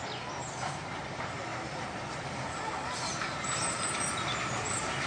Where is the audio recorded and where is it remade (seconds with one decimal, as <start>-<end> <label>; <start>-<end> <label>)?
0.0-5.1 recorded